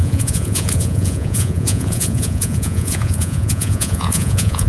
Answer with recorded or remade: remade